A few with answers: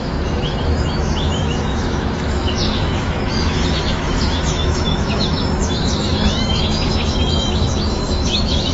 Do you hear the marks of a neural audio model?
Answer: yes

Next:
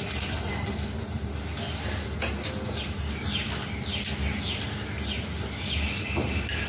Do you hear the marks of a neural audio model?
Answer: no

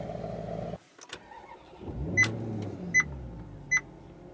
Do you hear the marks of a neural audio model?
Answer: no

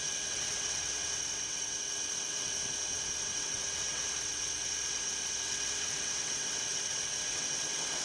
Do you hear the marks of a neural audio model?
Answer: yes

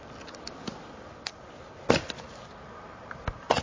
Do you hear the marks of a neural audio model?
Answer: yes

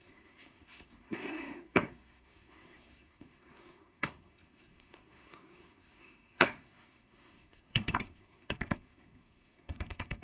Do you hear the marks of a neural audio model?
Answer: yes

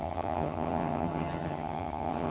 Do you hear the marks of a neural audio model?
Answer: yes